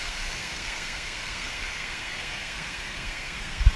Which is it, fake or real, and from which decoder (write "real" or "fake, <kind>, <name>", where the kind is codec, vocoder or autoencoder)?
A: fake, codec, SNAC